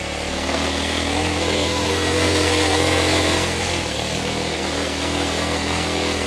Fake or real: fake